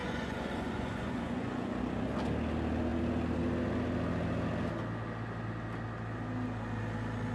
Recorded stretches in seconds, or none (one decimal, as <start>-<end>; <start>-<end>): 1.8-7.3